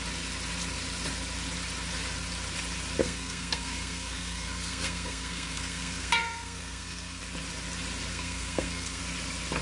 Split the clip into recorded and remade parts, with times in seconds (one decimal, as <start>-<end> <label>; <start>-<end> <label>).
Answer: 0.0-3.0 recorded; 3.0-7.2 remade; 7.2-8.1 recorded; 8.1-9.0 remade; 9.0-9.6 recorded